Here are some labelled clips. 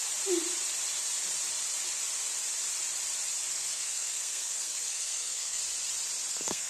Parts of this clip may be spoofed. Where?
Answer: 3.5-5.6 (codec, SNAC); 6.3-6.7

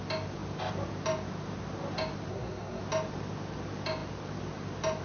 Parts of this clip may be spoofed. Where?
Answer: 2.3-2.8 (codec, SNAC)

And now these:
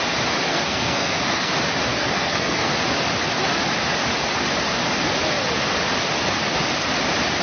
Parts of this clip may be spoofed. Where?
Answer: 0.5-1.5 (codec, SNAC); 1.9-2.7